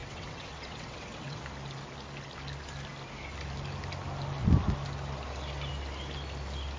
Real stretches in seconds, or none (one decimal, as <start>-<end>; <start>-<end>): 1.4-6.8